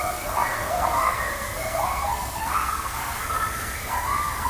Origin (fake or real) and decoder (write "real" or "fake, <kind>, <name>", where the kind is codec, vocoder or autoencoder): fake, codec, SNAC